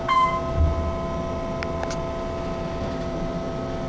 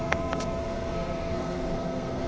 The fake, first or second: second